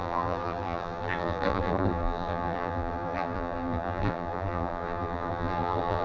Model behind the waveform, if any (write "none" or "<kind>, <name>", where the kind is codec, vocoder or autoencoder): vocoder, BigVGAN v2